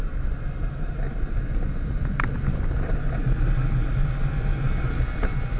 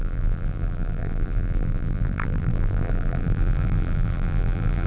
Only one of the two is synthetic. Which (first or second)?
second